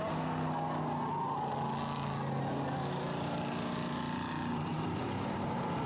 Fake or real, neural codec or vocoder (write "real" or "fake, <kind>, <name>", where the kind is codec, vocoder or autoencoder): real